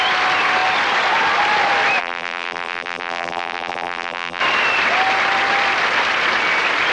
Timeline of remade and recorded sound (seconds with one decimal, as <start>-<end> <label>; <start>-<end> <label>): 0.0-2.0 recorded; 2.0-4.4 remade; 4.4-6.9 recorded